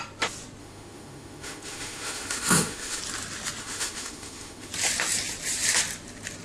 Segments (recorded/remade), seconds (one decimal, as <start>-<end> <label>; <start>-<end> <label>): 0.0-0.6 recorded; 0.6-3.0 remade; 3.0-3.6 recorded; 3.6-4.7 remade; 4.7-6.4 recorded